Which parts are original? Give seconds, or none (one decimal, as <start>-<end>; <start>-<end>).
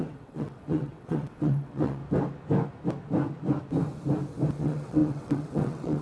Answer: 2.0-4.6